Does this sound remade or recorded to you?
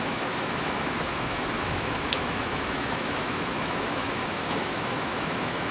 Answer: remade